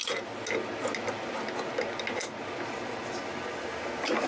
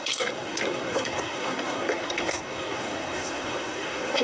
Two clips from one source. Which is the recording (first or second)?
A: first